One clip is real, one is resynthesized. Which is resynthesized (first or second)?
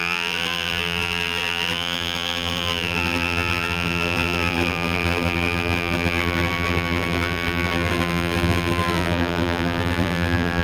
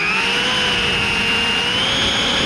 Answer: first